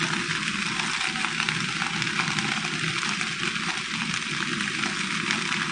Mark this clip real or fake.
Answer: real